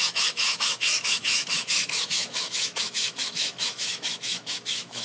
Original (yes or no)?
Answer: no